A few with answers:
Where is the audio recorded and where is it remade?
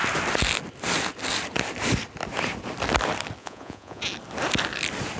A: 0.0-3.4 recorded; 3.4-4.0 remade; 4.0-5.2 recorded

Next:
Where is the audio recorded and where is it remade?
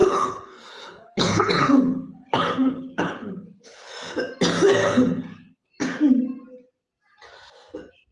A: 0.0-3.9 remade; 3.9-4.8 recorded; 4.8-5.7 remade; 5.7-8.1 recorded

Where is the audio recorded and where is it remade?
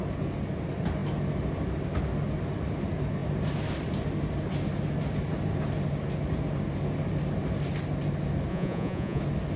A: 0.0-8.5 recorded; 8.5-9.2 remade; 9.2-9.6 recorded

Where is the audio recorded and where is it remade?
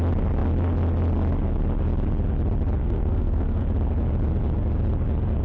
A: 0.0-2.8 recorded; 2.8-3.7 remade; 3.7-5.4 recorded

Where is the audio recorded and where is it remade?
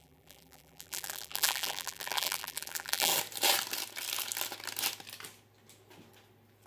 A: 0.0-3.1 remade; 3.1-6.7 recorded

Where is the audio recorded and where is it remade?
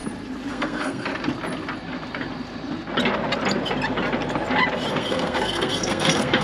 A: 0.0-0.5 recorded; 0.5-1.1 remade; 1.1-4.9 recorded; 4.9-6.4 remade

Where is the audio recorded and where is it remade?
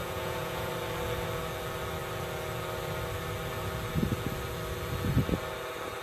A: 0.0-0.7 remade; 0.7-6.0 recorded